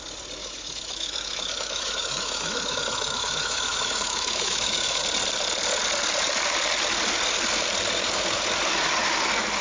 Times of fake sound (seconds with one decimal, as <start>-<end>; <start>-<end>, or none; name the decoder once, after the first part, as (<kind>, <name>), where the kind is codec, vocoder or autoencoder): 0.4-5.0 (autoencoder, DAC-VAE)